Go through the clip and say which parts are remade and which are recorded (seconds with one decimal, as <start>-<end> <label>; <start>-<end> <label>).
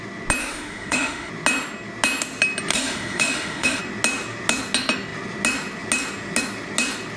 0.0-0.4 recorded; 0.4-1.3 remade; 1.3-2.7 recorded; 2.7-3.8 remade; 3.8-7.2 recorded